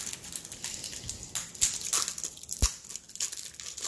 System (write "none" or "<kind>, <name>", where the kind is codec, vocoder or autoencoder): none